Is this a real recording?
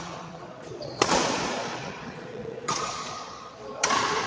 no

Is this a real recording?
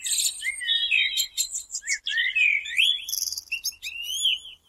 yes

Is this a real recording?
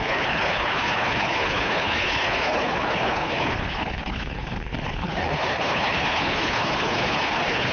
no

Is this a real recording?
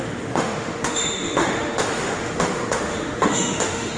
no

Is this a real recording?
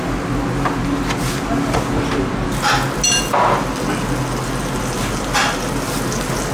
yes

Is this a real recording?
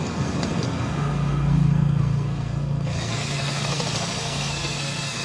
no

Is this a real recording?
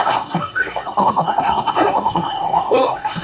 no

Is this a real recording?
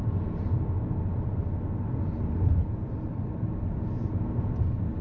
yes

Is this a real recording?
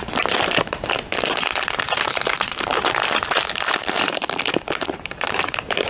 no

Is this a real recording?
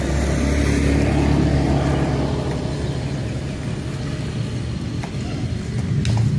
yes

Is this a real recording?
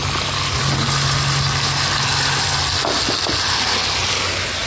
yes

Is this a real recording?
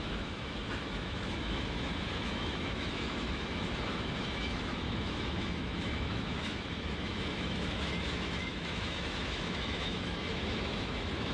no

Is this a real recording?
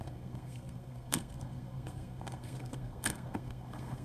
no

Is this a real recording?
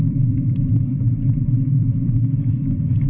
no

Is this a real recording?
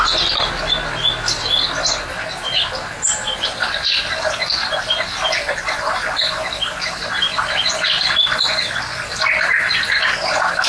yes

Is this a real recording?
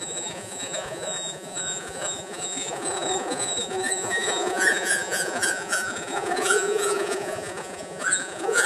no